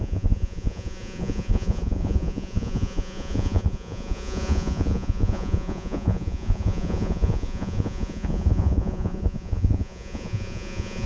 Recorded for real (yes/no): no